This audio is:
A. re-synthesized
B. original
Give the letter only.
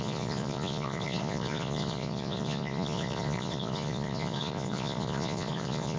A